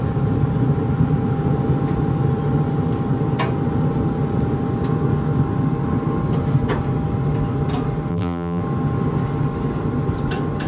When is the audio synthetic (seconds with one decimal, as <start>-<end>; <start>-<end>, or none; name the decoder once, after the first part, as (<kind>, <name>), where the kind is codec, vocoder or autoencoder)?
8.1-8.6 (vocoder, BigVGAN v2)